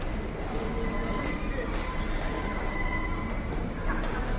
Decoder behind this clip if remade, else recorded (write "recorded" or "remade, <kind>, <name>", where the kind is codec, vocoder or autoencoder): recorded